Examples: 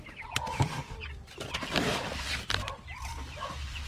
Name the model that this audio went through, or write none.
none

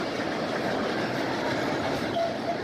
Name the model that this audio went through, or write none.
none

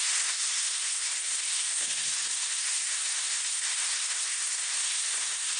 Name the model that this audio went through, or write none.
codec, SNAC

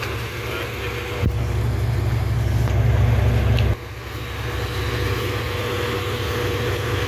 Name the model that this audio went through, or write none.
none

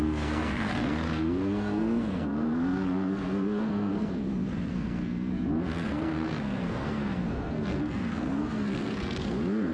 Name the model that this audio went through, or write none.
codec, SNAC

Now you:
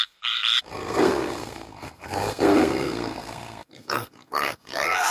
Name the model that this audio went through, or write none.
codec, SNAC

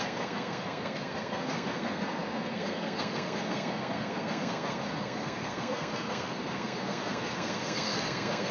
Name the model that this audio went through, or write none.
codec, SNAC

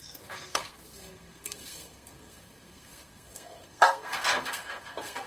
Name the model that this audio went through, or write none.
codec, SNAC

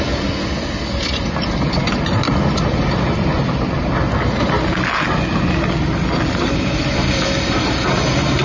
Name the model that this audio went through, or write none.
none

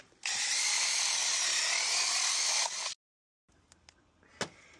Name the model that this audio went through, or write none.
none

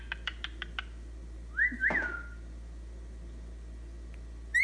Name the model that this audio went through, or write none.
none